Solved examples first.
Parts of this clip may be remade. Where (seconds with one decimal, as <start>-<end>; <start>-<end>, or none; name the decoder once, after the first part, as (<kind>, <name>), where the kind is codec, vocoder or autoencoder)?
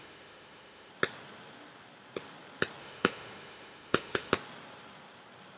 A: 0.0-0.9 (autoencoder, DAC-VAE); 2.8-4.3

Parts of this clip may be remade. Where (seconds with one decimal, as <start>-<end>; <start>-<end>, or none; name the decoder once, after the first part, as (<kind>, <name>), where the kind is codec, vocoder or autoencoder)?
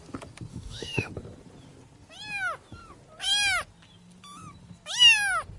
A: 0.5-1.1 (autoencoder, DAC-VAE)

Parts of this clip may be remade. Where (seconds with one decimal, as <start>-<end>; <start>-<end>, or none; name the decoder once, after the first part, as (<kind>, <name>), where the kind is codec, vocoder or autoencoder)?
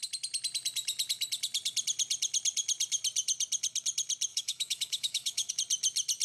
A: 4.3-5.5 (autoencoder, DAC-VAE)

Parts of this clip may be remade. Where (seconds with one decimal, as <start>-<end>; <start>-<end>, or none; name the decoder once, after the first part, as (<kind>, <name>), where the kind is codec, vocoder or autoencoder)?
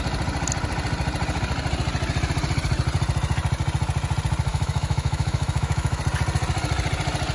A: 4.5-6.0 (autoencoder, DAC-VAE)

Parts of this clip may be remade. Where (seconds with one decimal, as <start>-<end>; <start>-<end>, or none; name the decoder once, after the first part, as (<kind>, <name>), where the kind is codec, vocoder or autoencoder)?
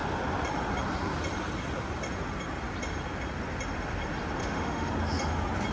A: 4.4-4.9 (autoencoder, DAC-VAE)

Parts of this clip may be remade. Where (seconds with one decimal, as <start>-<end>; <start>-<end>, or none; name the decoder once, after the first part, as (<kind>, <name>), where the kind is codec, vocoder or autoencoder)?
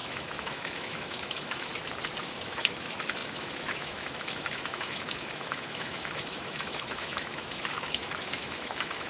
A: 0.0-1.7 (autoencoder, DAC-VAE); 2.2-9.1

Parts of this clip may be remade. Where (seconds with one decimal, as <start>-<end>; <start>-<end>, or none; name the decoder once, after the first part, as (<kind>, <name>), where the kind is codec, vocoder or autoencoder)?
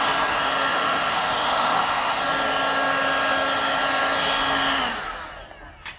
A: 0.7-2.2 (autoencoder, DAC-VAE)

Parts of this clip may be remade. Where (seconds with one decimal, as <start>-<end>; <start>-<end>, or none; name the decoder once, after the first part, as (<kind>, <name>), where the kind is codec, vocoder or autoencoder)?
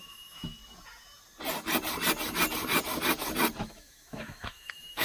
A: 0.0-0.6 (autoencoder, DAC-VAE); 3.6-5.0